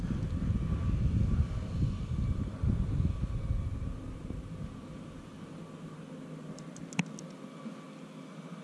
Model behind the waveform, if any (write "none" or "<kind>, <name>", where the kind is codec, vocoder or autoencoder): none